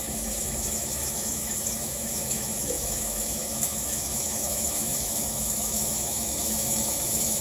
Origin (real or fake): fake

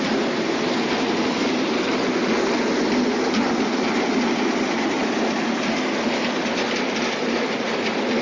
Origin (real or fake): real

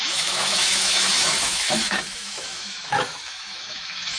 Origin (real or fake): fake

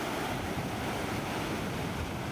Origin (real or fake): real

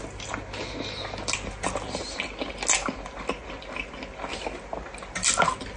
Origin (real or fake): real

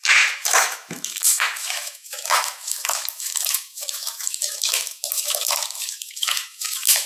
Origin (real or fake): fake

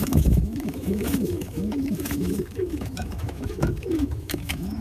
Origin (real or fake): fake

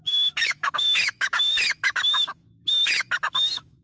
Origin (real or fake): fake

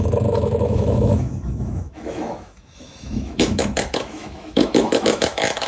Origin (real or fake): fake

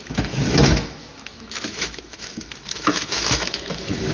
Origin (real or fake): fake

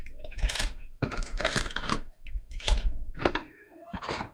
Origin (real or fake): fake